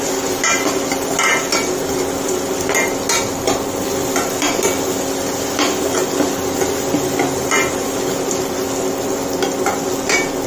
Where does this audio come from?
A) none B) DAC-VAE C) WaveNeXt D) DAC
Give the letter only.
A